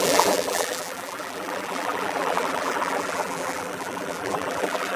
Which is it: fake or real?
fake